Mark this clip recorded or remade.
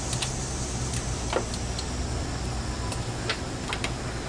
recorded